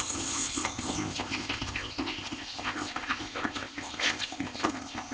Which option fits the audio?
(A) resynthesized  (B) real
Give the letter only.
A